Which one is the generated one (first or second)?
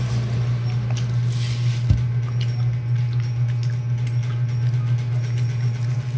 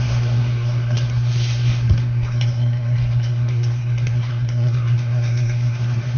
second